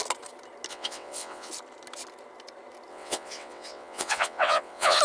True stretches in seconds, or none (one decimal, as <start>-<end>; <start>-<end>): 0.0-0.7; 1.5-2.9

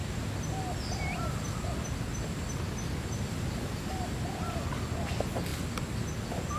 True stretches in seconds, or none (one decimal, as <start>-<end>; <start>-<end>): 0.0-6.6

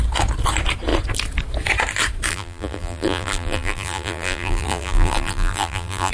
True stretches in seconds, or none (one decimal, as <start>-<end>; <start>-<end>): 0.0-2.3

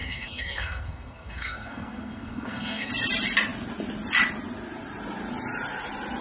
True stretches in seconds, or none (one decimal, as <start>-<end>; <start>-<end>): 2.9-6.2

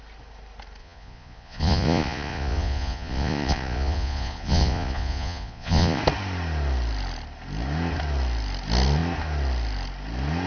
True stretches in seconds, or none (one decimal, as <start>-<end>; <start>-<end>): 0.0-0.8; 6.0-10.5

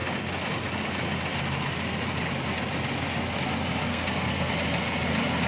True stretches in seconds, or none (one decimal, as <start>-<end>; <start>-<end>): 0.0-3.9; 4.5-5.5

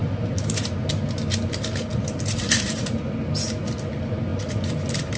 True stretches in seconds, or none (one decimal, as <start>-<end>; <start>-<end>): 0.9-1.9; 3.1-4.3

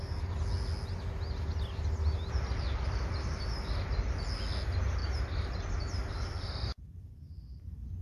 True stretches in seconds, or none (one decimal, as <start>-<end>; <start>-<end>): 0.0-5.0; 5.5-8.0